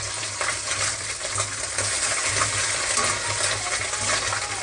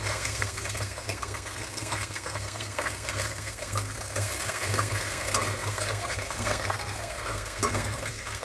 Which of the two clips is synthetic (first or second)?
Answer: second